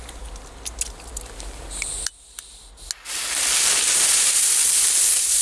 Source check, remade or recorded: recorded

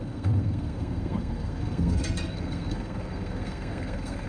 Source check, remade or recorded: remade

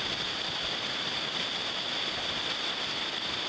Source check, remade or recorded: recorded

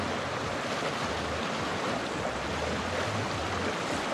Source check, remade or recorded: recorded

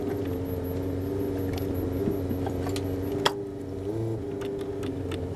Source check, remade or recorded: recorded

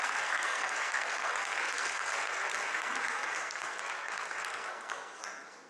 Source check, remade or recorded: remade